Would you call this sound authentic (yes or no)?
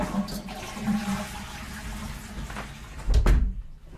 yes